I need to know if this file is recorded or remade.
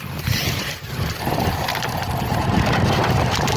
remade